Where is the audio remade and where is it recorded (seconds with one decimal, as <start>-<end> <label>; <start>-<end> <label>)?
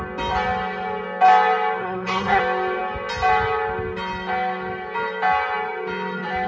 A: 0.0-1.8 recorded; 1.8-2.4 remade; 2.4-6.5 recorded